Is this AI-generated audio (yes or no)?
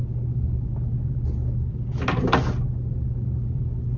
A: no